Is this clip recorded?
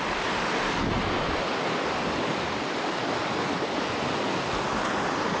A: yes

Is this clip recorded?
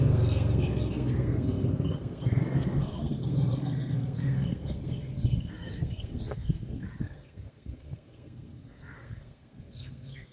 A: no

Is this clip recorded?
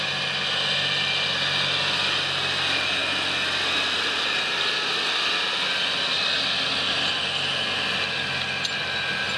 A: yes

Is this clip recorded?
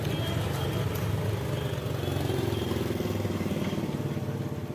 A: yes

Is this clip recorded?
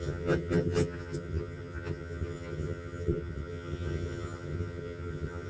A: no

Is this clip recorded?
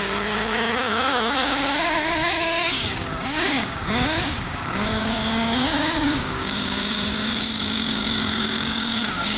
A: no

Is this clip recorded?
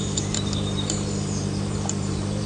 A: no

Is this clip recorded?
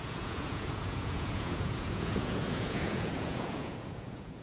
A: no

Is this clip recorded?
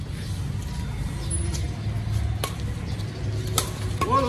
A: yes